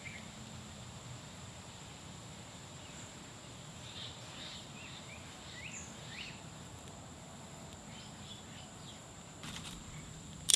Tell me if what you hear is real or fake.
fake